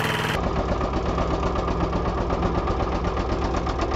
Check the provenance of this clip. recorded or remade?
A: recorded